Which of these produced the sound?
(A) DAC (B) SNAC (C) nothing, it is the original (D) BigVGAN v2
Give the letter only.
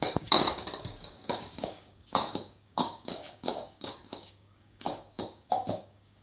A